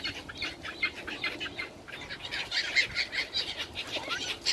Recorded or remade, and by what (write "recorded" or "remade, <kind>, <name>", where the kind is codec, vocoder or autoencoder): recorded